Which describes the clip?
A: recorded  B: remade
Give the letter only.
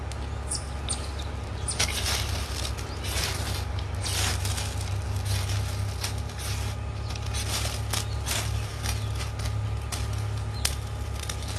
A